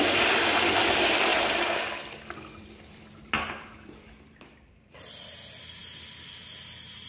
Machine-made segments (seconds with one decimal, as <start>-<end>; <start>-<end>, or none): 1.3-5.2